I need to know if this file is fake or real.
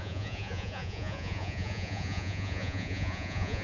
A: fake